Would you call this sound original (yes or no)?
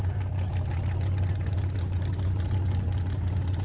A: yes